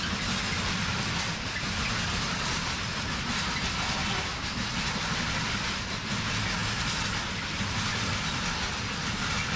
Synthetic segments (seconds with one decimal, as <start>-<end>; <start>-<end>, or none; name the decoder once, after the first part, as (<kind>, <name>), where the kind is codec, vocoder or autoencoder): none